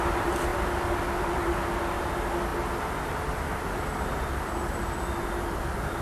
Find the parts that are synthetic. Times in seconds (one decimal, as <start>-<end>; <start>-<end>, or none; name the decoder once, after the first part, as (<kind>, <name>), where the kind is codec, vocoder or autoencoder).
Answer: none